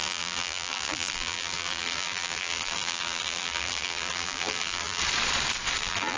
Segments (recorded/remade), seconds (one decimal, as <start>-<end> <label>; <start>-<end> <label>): 0.0-5.0 remade; 5.0-5.8 recorded; 5.8-6.2 remade